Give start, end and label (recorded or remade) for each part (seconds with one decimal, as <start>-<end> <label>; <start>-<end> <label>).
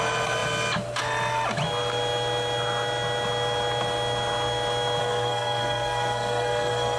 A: 0.0-5.0 recorded; 5.0-7.0 remade